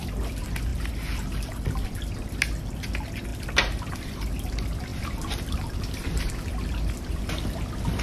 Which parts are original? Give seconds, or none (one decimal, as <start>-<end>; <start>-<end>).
0.0-4.9; 6.3-8.0